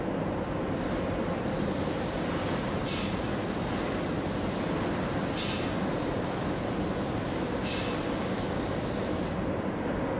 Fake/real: real